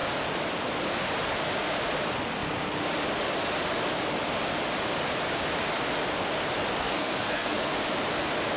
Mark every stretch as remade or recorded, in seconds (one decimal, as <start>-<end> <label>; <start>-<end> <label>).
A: 0.0-6.8 recorded; 6.8-7.7 remade; 7.7-8.6 recorded